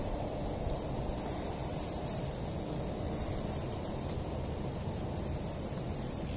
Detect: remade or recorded recorded